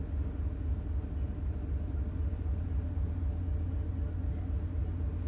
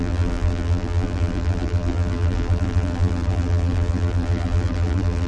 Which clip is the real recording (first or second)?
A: first